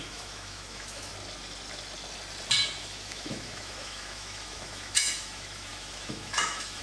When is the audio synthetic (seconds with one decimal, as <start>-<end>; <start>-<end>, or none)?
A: 0.0-1.1; 2.8-6.8